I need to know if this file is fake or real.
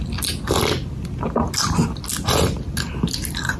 real